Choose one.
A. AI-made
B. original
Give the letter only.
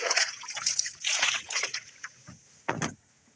A